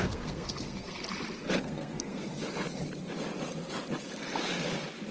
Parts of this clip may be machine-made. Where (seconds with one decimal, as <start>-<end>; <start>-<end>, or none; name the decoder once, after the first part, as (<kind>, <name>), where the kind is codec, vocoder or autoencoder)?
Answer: 0.0-1.0 (codec, SNAC); 1.6-2.3